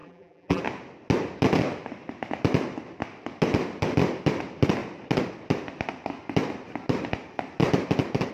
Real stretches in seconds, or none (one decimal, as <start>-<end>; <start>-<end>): 0.6-8.3